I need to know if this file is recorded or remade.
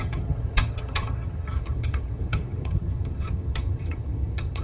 remade